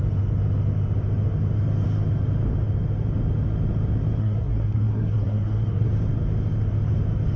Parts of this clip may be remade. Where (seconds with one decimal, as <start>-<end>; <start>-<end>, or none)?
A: 4.2-5.9